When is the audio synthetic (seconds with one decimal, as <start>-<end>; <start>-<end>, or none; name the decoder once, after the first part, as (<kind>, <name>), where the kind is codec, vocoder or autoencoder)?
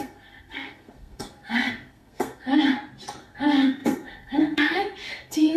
0.0-2.5 (codec, SNAC); 3.2-5.6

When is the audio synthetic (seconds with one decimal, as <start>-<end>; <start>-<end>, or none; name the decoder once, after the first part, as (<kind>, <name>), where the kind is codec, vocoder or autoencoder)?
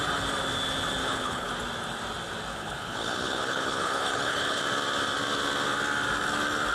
1.0-1.5 (codec, HILCodec); 2.5-4.6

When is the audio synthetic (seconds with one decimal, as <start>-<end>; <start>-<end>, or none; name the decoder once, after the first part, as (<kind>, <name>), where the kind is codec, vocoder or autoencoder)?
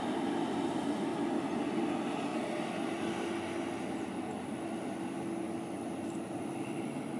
none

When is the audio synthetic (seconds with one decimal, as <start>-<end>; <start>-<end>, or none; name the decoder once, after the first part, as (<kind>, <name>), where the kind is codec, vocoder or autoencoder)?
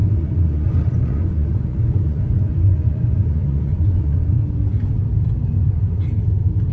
0.0-4.4 (vocoder, Vocos)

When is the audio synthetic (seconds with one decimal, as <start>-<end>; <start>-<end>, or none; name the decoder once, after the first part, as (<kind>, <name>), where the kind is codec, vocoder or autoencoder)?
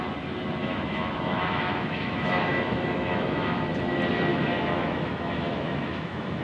0.6-3.6 (autoencoder, DAC-VAE); 4.3-6.4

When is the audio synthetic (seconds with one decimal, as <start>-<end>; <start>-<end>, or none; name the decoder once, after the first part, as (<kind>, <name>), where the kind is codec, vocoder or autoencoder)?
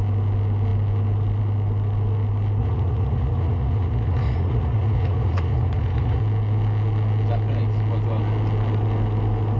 2.6-6.2 (vocoder, Vocos)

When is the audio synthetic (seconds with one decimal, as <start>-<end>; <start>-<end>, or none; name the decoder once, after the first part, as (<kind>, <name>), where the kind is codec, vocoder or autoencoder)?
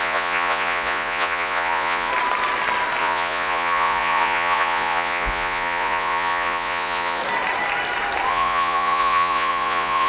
0.0-2.1 (vocoder, Vocos); 3.0-7.2; 8.3-10.1